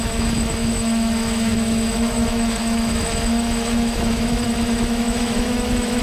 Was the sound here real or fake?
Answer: fake